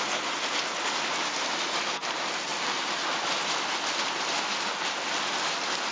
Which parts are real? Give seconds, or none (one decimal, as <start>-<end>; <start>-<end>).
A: 0.0-5.9